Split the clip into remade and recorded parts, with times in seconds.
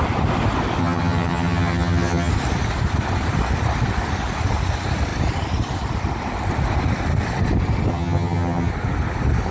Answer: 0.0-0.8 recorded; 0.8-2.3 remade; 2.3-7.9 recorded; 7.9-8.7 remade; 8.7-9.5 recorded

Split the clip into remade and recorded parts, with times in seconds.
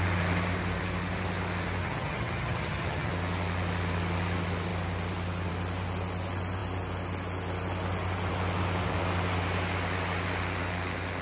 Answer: 0.0-1.8 recorded; 1.8-3.1 remade; 3.1-11.2 recorded